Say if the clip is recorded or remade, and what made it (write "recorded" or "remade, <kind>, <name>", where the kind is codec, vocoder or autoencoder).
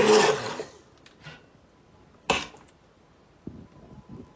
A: recorded